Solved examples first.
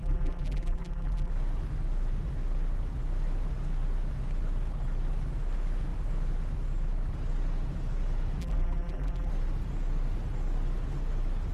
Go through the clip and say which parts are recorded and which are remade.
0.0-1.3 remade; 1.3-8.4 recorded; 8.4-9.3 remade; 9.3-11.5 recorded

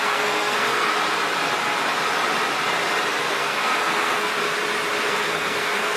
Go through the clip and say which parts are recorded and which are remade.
0.0-0.9 remade; 0.9-3.3 recorded; 3.3-4.3 remade; 4.3-5.0 recorded; 5.0-6.0 remade

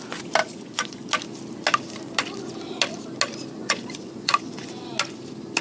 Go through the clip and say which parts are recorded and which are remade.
0.0-0.4 recorded; 0.4-1.1 remade; 1.1-3.6 recorded; 3.6-4.7 remade; 4.7-5.6 recorded